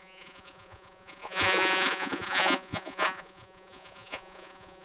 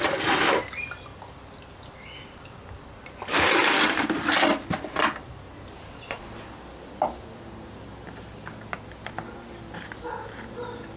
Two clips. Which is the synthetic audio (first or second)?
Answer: first